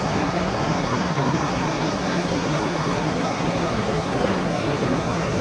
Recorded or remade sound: remade